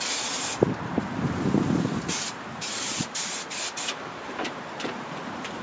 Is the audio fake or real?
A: fake